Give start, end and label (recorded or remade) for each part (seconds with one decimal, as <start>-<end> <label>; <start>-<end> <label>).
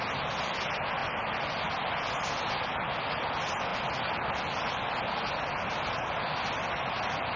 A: 0.0-7.4 recorded